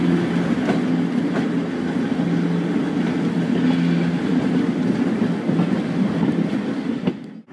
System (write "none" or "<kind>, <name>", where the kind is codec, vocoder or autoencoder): none